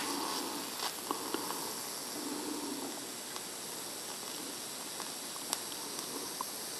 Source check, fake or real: real